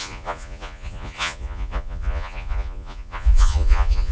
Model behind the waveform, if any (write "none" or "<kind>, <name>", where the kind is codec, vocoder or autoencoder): vocoder, Vocos